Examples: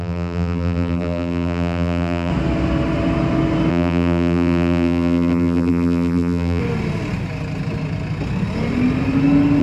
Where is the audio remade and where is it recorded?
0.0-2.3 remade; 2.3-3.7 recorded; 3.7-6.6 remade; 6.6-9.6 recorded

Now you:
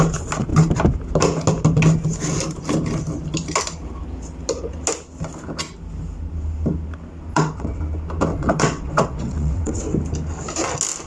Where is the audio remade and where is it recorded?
0.0-7.3 recorded; 7.3-7.8 remade; 7.8-8.3 recorded; 8.3-9.8 remade; 9.8-11.1 recorded

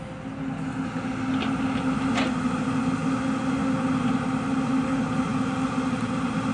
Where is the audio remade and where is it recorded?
0.0-6.5 recorded

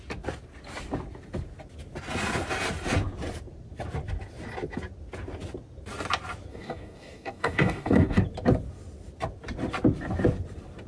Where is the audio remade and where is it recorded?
0.0-6.5 recorded; 6.5-8.2 remade; 8.2-10.9 recorded

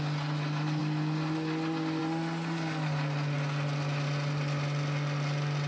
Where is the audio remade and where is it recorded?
0.0-5.7 recorded

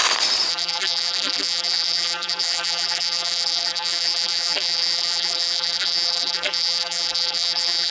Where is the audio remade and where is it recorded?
0.0-0.5 recorded; 0.5-7.9 remade

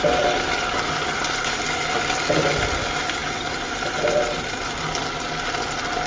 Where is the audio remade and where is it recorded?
0.0-6.1 recorded

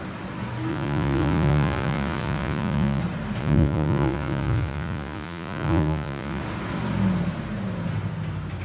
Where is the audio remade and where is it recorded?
0.0-0.7 recorded; 0.7-3.0 remade; 3.0-3.4 recorded; 3.4-6.4 remade; 6.4-8.6 recorded